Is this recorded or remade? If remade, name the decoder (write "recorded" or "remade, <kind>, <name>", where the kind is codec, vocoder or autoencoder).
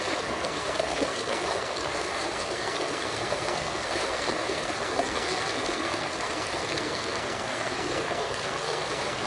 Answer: remade, codec, SNAC